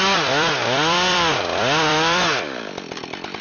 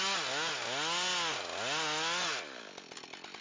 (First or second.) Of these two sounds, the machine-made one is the first